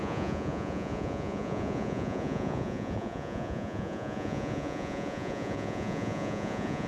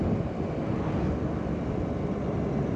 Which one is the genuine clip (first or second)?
second